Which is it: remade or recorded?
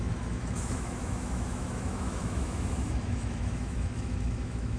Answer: remade